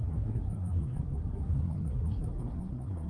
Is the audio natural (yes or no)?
no